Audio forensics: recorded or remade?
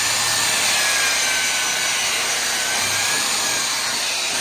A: recorded